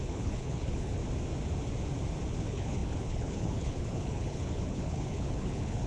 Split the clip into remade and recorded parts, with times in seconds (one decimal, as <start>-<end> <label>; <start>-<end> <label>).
0.0-1.0 remade; 1.0-2.3 recorded; 2.3-5.9 remade